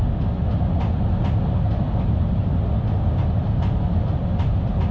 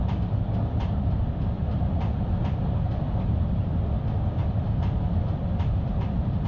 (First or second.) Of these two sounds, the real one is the first